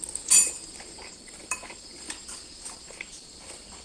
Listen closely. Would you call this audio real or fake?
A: real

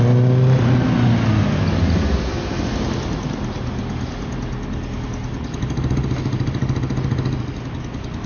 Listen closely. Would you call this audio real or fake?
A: real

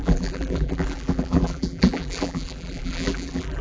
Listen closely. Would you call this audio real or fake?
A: fake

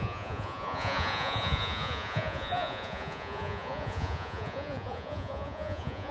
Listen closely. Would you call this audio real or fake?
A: fake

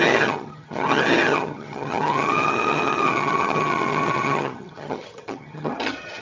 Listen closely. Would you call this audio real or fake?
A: fake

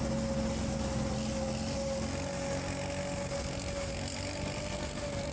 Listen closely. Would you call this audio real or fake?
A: real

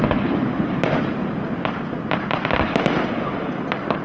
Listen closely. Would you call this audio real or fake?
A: real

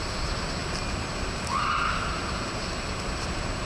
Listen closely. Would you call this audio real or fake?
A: real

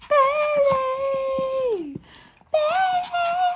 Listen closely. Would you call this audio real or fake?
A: real